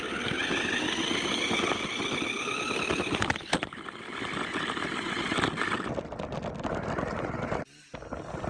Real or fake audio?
real